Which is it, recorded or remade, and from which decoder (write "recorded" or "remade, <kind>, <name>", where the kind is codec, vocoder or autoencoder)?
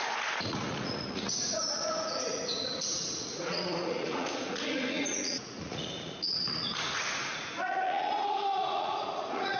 remade, vocoder, Vocos